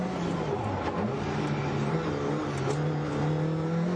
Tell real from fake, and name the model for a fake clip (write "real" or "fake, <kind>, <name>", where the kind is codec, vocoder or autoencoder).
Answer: real